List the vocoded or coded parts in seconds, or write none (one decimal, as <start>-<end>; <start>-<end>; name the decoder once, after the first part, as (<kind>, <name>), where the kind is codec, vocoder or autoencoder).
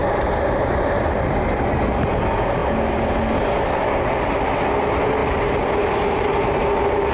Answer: none